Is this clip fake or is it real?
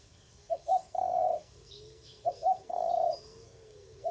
fake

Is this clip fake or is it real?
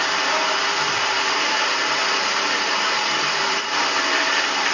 fake